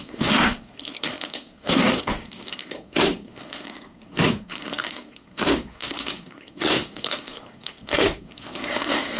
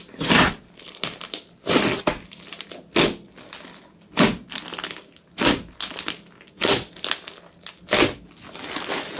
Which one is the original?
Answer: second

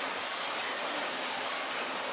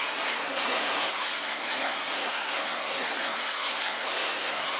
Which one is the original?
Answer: first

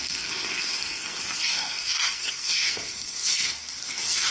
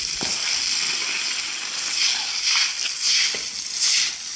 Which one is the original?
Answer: second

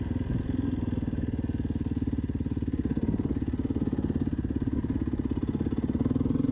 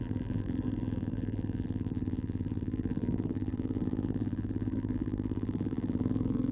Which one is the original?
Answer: first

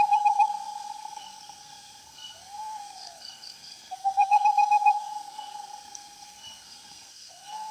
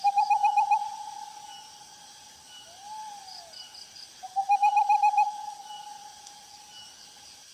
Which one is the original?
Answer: second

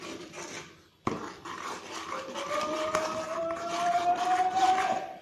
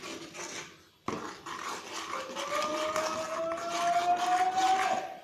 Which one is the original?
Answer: second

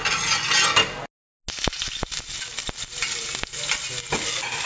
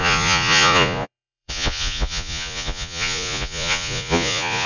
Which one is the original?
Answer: first